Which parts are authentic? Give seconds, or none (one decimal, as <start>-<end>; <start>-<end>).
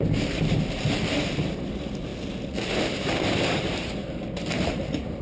2.1-3.0; 4.0-4.5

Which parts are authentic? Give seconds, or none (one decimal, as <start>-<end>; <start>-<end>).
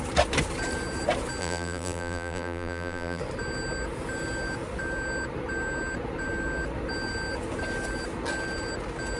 0.0-1.4; 3.2-9.2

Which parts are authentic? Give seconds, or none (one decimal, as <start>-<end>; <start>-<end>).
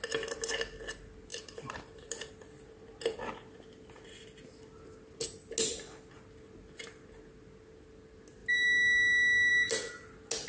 0.0-1.3; 2.3-10.5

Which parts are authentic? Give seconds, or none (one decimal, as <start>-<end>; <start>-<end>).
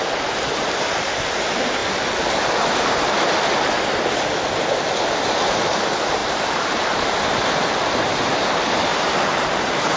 0.0-6.2; 8.4-8.9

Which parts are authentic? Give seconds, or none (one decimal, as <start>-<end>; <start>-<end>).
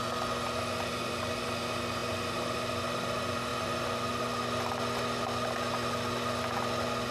0.0-7.1